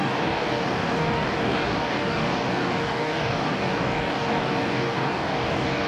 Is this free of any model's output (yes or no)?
no